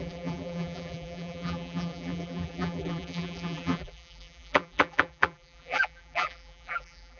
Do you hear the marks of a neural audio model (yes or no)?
yes